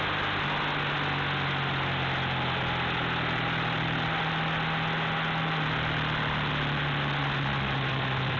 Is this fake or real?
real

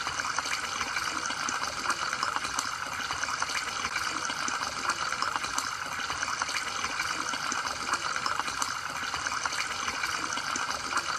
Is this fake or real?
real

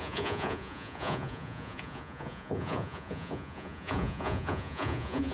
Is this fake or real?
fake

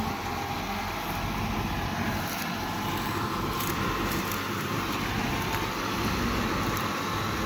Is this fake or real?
real